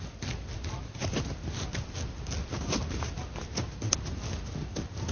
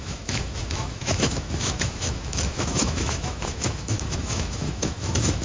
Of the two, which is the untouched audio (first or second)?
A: first